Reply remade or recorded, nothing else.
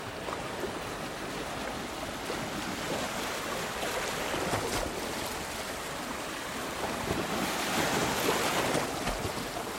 recorded